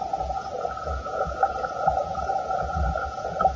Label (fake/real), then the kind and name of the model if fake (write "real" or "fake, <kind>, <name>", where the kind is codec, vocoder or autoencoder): fake, vocoder, Vocos